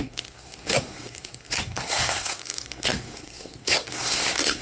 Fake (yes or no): yes